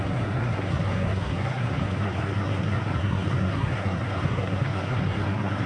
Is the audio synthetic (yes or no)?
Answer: yes